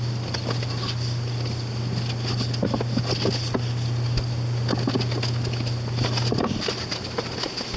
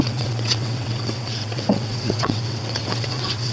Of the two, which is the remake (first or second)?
second